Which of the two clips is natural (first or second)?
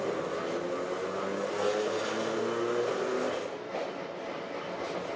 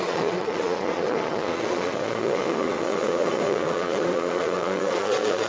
first